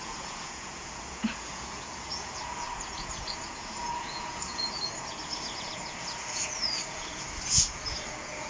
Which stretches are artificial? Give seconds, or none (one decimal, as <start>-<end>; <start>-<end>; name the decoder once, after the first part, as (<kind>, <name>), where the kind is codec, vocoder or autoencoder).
0.0-8.5 (vocoder, Vocos)